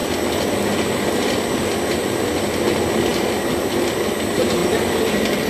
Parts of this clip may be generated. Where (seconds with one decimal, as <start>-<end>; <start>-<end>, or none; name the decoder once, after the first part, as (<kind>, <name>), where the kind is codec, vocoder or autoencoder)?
none